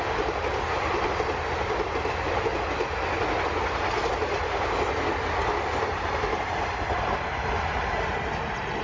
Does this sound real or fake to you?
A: real